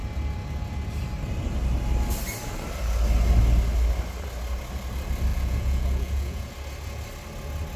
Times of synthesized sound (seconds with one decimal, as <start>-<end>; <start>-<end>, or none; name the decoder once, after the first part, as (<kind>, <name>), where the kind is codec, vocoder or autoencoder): 5.3-6.5 (vocoder, Vocos)